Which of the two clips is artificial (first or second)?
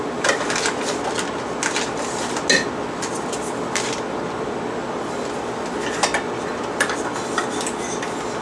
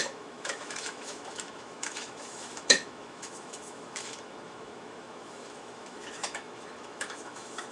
second